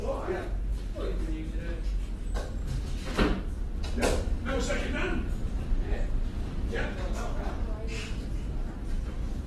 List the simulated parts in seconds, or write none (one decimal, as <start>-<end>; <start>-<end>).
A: none